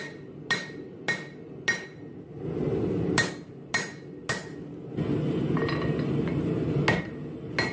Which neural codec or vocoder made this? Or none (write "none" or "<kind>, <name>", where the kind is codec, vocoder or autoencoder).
none